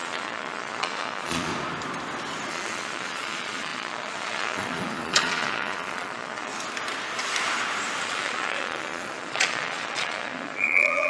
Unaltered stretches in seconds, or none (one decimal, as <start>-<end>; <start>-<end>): 1.5-2.5; 6.5-8.0